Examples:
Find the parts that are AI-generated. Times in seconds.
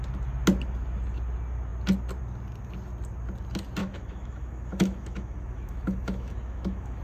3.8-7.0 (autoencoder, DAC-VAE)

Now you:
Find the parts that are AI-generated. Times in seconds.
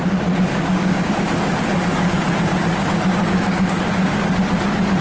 0.5-1.1 (codec, DAC); 3.1-3.8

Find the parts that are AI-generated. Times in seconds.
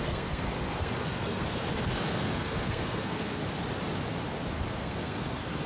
0.0-3.4 (codec, SNAC); 4.7-5.7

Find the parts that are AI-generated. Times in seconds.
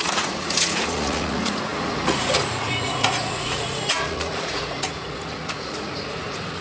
0.0-6.6 (vocoder, Vocos)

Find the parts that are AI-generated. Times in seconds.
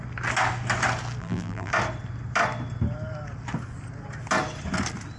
1.2-1.7 (vocoder, BigVGAN v2)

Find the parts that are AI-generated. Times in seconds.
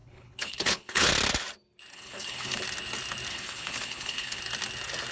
0.0-1.1 (codec, HILCodec); 1.9-2.6; 3.3-4.4